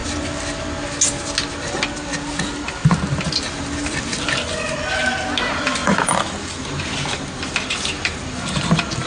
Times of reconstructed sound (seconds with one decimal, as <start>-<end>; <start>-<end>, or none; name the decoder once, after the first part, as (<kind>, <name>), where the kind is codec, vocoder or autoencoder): 5.8-9.1 (vocoder, BigVGAN v2)